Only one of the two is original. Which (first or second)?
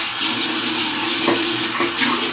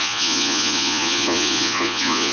first